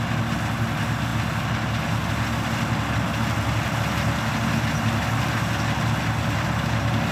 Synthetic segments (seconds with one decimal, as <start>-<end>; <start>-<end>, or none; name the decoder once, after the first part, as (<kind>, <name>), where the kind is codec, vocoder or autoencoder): none